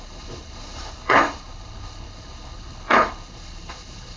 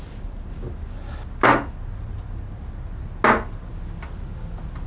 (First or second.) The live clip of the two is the second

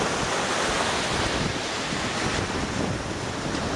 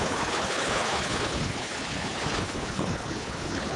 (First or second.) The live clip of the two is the first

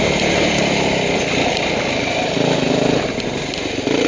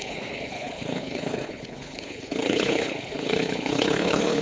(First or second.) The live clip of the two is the first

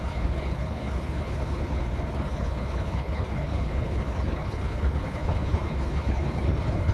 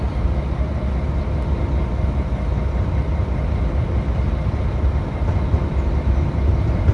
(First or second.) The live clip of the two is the second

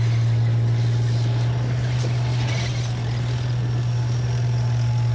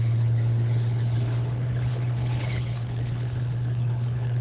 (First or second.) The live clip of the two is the first